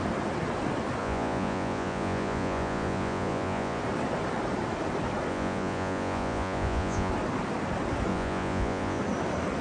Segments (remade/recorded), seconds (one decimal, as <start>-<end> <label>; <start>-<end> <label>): 0.0-1.0 recorded; 1.0-3.8 remade; 3.8-5.3 recorded; 5.3-7.1 remade; 7.1-8.1 recorded; 8.1-9.0 remade; 9.0-9.6 recorded